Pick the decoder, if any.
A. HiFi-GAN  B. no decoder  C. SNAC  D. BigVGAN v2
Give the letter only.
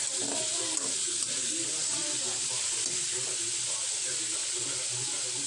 B